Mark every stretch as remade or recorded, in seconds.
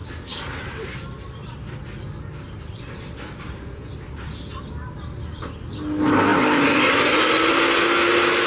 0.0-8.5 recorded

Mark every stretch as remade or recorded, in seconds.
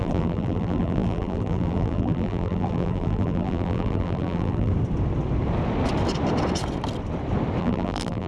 0.0-4.7 remade; 4.7-7.6 recorded; 7.6-8.3 remade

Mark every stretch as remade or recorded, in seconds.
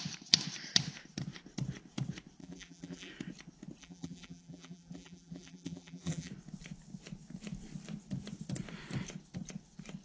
0.0-2.4 recorded; 2.4-3.1 remade; 3.1-3.8 recorded; 3.8-6.3 remade; 6.3-10.0 recorded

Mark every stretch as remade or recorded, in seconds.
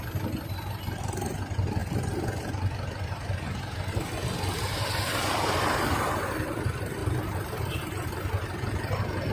0.0-1.8 remade; 1.8-6.2 recorded; 6.2-9.3 remade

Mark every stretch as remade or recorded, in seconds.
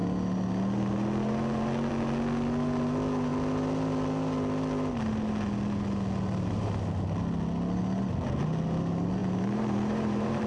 0.0-9.2 recorded; 9.2-10.5 remade